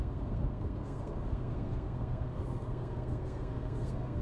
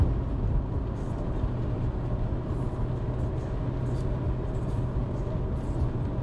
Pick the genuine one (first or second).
second